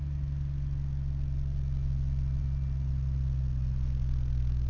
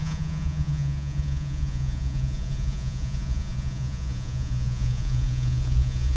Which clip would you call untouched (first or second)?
first